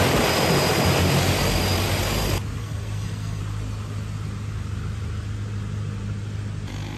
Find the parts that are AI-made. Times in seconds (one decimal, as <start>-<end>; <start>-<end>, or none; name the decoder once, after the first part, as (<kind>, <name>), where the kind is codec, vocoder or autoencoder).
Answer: 2.6-3.4 (codec, SNAC)